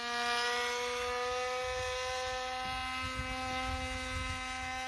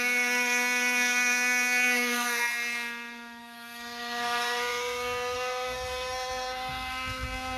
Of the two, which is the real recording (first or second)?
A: first